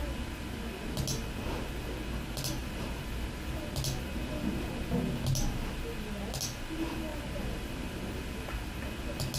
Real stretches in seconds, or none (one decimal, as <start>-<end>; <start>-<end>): 0.0-2.6; 3.7-7.1; 8.8-9.4